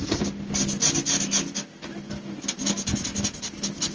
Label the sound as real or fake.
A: real